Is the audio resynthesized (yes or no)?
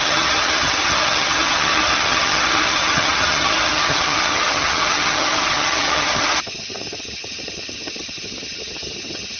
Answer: yes